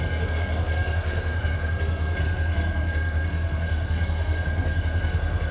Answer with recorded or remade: remade